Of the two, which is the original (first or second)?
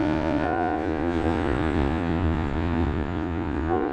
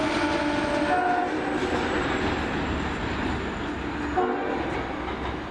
second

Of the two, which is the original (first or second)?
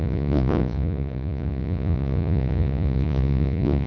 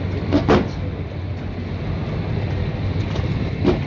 second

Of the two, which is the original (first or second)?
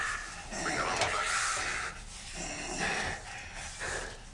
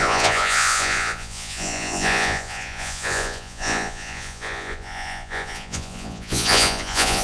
first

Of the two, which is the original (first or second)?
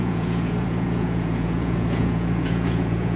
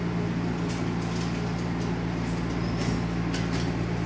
second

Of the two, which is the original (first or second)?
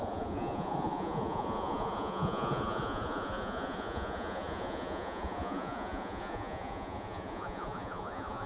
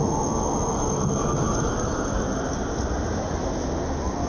second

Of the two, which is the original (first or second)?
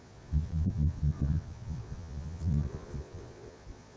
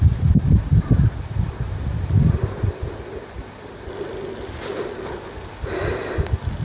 second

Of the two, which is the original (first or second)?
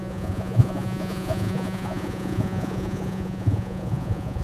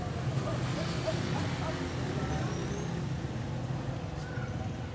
second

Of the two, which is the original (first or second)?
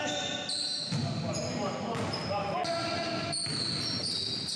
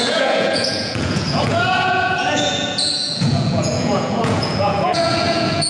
first